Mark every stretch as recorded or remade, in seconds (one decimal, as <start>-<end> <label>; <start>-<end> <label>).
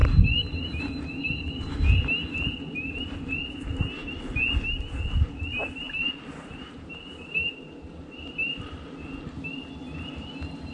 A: 0.0-0.8 remade; 0.8-6.0 recorded; 6.0-8.6 remade; 8.6-10.7 recorded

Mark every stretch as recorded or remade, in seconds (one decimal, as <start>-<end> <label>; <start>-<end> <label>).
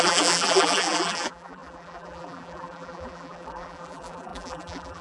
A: 0.0-5.0 remade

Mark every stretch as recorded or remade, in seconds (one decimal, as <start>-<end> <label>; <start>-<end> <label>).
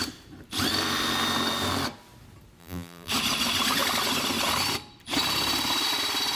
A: 0.0-2.6 recorded; 2.6-3.1 remade; 3.1-6.4 recorded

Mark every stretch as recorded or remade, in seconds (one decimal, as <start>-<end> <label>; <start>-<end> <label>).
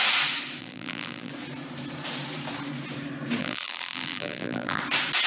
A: 0.0-0.6 recorded; 0.6-1.3 remade; 1.3-3.4 recorded; 3.4-4.8 remade; 4.8-5.3 recorded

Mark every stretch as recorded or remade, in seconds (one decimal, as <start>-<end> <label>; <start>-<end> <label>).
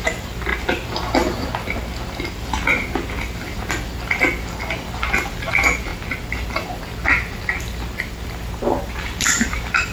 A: 0.0-0.5 remade; 0.5-5.5 recorded; 5.5-5.9 remade; 5.9-8.0 recorded; 8.0-9.9 remade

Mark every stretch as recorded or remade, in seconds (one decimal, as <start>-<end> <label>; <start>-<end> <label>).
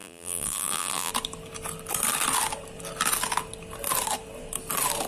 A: 0.0-1.1 remade; 1.1-5.1 recorded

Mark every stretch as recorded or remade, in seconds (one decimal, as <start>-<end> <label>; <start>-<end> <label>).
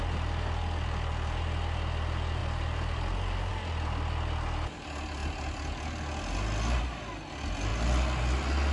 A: 0.0-2.4 recorded; 2.4-3.5 remade; 3.5-7.7 recorded; 7.7-8.2 remade; 8.2-8.7 recorded